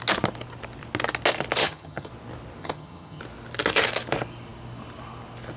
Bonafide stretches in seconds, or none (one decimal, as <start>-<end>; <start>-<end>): 0.0-1.6; 2.1-2.6; 3.2-5.6